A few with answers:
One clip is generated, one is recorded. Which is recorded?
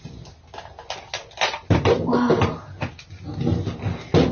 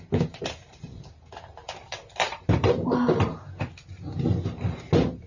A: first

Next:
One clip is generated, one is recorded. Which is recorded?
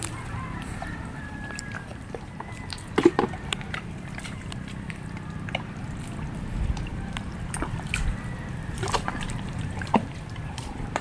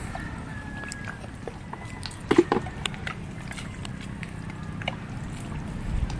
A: second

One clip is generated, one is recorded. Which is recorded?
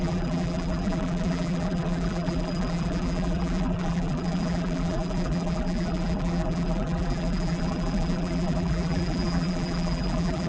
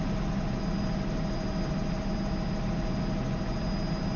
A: second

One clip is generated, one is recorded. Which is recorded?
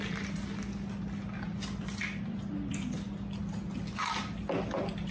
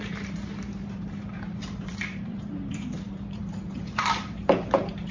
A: first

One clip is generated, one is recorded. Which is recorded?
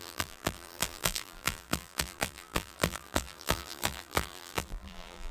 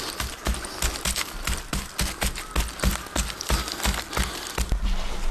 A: second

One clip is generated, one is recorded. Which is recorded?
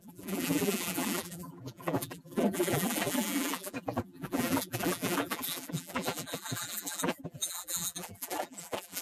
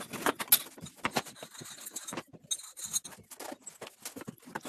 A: second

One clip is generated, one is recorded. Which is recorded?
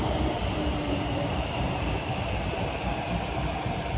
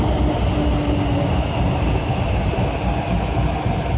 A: second